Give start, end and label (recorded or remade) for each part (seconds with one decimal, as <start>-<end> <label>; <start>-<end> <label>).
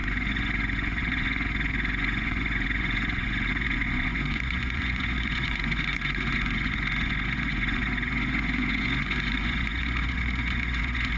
0.0-11.2 remade